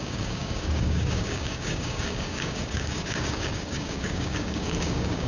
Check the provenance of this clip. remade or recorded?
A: remade